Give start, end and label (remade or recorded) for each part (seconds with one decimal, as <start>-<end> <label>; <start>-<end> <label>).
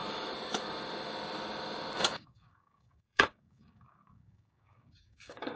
0.0-2.0 recorded; 2.0-5.6 remade